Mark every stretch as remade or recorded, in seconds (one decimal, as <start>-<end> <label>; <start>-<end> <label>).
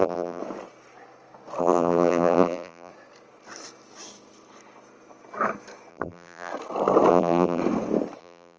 0.0-0.4 remade; 0.4-1.6 recorded; 1.6-2.9 remade; 2.9-5.9 recorded; 5.9-6.5 remade; 6.5-7.1 recorded; 7.1-7.6 remade; 7.6-8.2 recorded; 8.2-8.6 remade